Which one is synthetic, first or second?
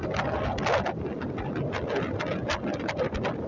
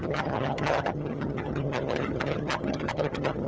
second